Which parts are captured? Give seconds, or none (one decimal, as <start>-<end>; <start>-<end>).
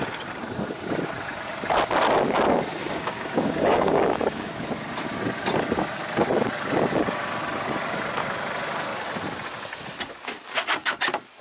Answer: 0.0-2.8; 4.5-11.4